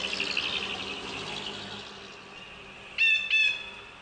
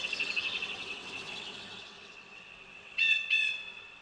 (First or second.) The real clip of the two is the first